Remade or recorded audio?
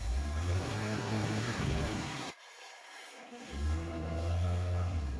remade